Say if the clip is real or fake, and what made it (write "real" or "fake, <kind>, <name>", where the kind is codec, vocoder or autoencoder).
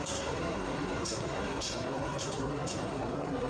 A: fake, codec, SNAC